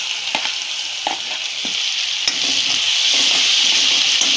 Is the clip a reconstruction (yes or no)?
no